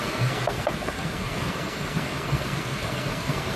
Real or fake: fake